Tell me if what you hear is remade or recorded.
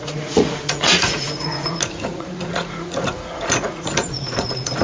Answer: remade